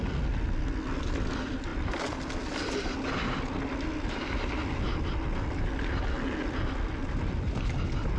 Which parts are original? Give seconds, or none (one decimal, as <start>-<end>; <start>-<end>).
0.0-8.2